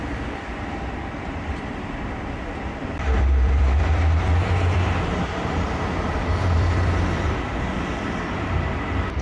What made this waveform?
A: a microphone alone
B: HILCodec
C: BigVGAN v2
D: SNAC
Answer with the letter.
C